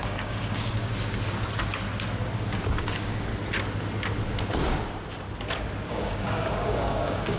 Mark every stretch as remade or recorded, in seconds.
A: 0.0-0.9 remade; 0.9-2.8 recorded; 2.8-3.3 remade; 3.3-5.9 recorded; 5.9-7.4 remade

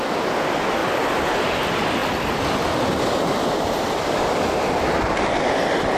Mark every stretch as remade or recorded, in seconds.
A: 0.0-6.0 recorded

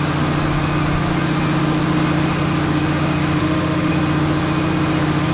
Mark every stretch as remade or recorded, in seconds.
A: 0.0-3.4 recorded; 3.4-3.9 remade; 3.9-5.3 recorded